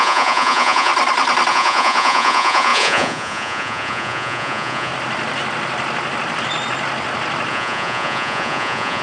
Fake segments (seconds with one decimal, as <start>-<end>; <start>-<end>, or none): 0.0-0.9; 1.5-4.9; 7.5-9.0